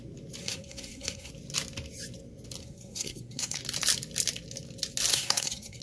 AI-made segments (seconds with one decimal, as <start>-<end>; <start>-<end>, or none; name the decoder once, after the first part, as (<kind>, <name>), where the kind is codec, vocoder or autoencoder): 0.4-1.3 (codec, SNAC); 2.6-3.6; 5.1-5.8